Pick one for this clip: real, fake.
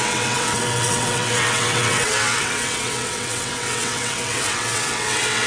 fake